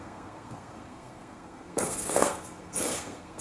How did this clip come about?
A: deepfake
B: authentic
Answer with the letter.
A